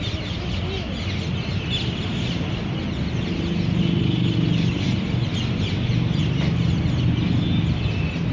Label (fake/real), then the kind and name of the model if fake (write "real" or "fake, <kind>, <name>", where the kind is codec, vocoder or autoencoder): real